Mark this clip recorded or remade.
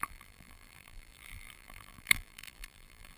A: remade